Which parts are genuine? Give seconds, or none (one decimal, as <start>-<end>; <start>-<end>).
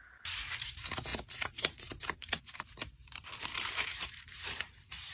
none